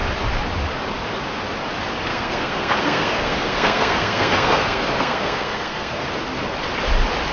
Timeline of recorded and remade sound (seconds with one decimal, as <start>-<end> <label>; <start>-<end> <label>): 0.0-2.1 recorded; 2.1-6.0 remade; 6.0-7.3 recorded